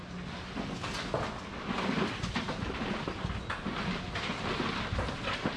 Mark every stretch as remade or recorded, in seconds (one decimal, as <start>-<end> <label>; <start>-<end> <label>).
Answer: 0.0-5.6 recorded

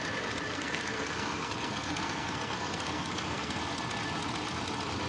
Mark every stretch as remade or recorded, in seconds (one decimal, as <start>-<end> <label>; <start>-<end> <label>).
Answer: 0.0-0.5 recorded; 0.5-3.6 remade; 3.6-5.1 recorded

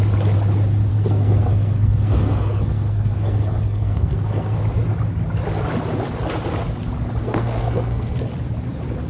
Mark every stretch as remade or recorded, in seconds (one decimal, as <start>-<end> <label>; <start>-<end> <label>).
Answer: 0.0-0.9 recorded; 0.9-4.6 remade; 4.6-7.2 recorded; 7.2-8.3 remade; 8.3-9.1 recorded

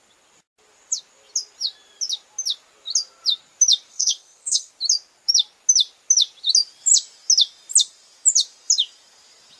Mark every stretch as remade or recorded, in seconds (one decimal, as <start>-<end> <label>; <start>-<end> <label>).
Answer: 0.0-3.9 recorded; 3.9-4.7 remade; 4.7-9.6 recorded

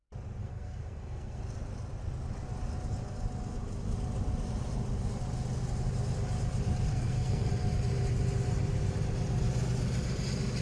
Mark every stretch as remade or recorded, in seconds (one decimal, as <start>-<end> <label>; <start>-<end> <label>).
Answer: 0.0-0.4 recorded; 0.4-1.4 remade; 1.4-6.9 recorded; 6.9-7.5 remade; 7.5-10.6 recorded

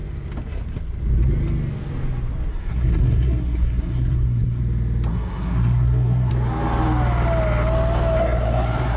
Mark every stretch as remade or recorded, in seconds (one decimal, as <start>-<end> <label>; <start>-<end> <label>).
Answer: 0.0-2.5 recorded; 2.5-4.6 remade; 4.6-5.1 recorded; 5.1-6.3 remade; 6.3-8.2 recorded; 8.2-9.0 remade

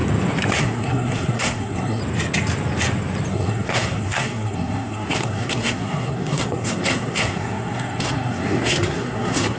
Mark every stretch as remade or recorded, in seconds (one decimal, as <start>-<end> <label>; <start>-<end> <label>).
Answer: 0.0-0.6 recorded; 0.6-2.0 remade; 2.0-3.3 recorded; 3.3-9.6 remade

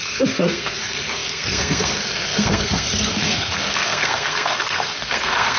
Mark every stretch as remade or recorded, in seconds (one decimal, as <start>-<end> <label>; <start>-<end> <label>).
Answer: 0.0-5.6 remade